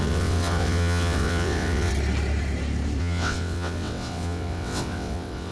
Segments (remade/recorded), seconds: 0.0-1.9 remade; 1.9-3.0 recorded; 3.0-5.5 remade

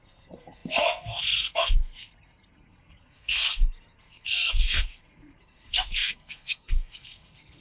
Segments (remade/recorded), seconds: 0.0-7.6 remade

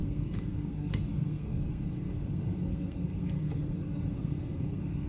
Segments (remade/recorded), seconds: 0.0-5.1 remade

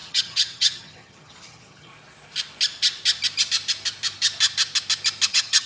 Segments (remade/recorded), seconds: 0.0-1.9 remade; 1.9-5.3 recorded; 5.3-5.7 remade

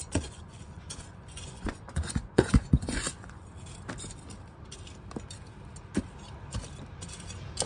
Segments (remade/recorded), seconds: 0.0-3.4 remade; 3.4-7.7 recorded

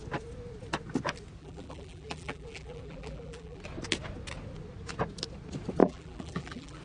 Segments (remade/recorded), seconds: 0.0-1.4 recorded; 1.4-3.6 remade; 3.6-5.8 recorded; 5.8-6.8 remade

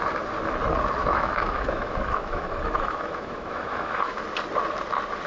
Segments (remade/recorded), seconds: 0.0-1.0 recorded; 1.0-4.2 remade; 4.2-5.3 recorded